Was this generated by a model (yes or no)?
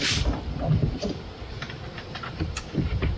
yes